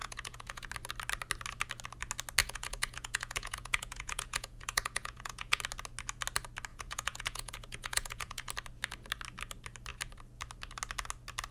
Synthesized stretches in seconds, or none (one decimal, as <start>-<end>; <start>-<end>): 0.0-0.7; 2.4-5.6; 6.7-8.5